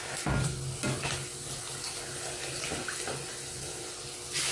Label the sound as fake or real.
real